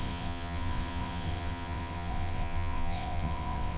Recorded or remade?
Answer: remade